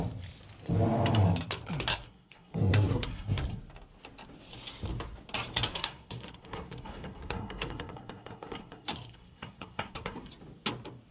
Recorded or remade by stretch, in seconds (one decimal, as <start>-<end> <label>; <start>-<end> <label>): 0.0-1.9 recorded; 1.9-3.6 remade; 3.6-5.7 recorded; 5.7-10.3 remade; 10.3-11.1 recorded